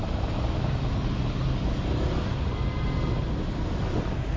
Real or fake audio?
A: real